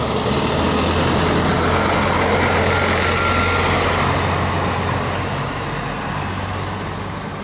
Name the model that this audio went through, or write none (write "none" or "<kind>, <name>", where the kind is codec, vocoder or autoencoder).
none